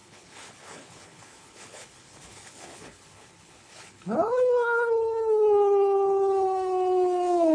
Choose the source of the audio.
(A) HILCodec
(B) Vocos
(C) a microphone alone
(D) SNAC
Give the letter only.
A